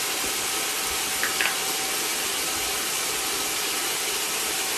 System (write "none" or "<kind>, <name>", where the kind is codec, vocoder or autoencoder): none